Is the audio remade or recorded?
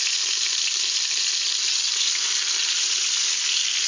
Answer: recorded